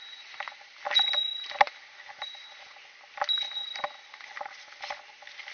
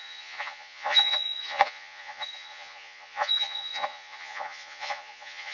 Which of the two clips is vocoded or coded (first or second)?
second